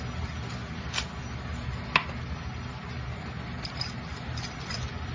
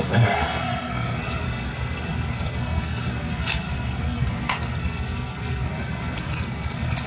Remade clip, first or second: second